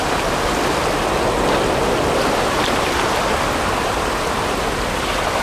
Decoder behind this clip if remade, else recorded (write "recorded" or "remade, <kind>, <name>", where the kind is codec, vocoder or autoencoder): recorded